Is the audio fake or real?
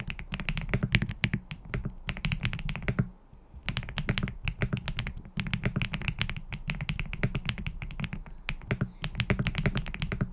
real